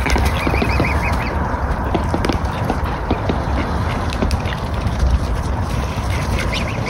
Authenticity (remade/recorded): remade